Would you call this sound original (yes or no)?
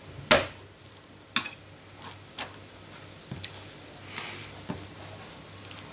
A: yes